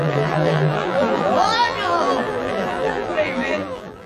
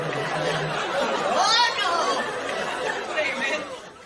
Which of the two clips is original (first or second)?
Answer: second